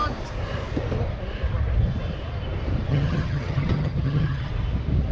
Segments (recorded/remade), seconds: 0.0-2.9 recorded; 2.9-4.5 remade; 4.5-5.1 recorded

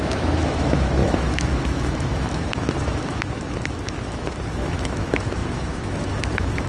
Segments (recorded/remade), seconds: 0.0-6.7 remade

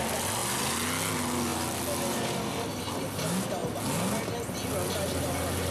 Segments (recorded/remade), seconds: 0.0-5.7 recorded

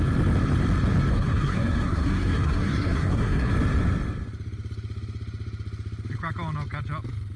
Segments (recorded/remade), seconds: 0.0-1.1 recorded; 1.1-3.5 remade; 3.5-7.4 recorded